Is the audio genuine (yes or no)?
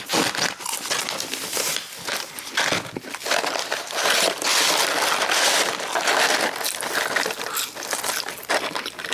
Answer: yes